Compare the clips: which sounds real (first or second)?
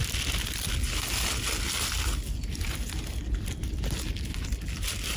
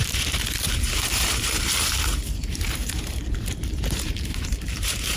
first